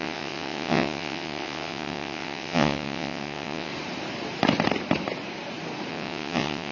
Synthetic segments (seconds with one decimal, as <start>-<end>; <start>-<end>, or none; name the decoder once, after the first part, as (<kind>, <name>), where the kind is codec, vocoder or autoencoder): 0.0-3.7 (vocoder, WaveNeXt); 5.9-6.7